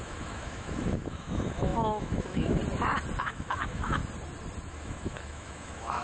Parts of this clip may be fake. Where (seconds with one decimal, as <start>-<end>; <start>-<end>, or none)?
0.0-2.6; 3.2-4.0; 4.7-6.0